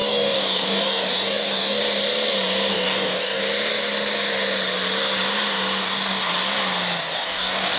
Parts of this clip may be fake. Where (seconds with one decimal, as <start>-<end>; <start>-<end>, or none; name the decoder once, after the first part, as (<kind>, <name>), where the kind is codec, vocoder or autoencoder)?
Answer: 0.0-1.8 (codec, DAC); 2.7-3.4; 5.8-6.3; 7.0-7.8